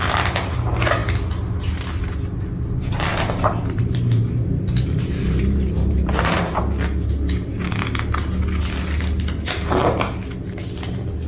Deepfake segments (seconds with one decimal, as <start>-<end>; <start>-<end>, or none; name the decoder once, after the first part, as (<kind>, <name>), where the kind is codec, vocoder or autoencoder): 3.1-6.6 (vocoder, BigVGAN v2)